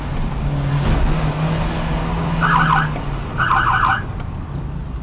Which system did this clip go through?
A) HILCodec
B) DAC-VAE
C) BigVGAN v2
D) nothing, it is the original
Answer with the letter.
D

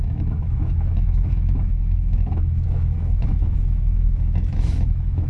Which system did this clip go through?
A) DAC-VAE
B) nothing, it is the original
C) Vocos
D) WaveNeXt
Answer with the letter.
A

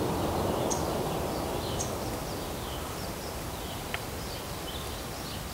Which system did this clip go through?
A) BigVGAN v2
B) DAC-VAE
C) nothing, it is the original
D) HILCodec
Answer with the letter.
C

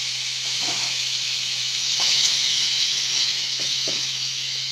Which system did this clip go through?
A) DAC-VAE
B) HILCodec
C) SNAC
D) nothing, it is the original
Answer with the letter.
A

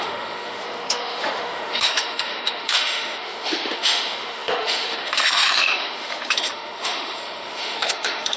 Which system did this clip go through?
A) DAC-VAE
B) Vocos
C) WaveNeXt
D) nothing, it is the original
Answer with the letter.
A